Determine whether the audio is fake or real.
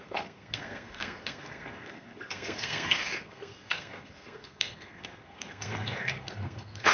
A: fake